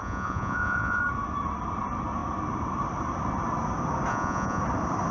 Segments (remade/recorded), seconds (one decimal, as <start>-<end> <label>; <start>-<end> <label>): 0.0-1.0 remade; 1.0-4.1 recorded; 4.1-4.6 remade; 4.6-5.1 recorded